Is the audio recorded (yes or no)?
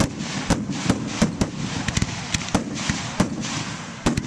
yes